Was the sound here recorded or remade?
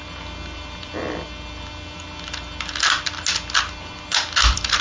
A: recorded